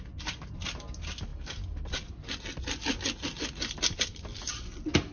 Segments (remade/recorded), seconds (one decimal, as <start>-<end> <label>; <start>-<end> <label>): 0.0-5.1 recorded